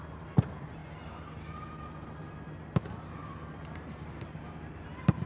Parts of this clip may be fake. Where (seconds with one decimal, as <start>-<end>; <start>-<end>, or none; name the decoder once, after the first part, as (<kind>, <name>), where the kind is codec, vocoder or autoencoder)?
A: none